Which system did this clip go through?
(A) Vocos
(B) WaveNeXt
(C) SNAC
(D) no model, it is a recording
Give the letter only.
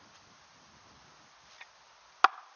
D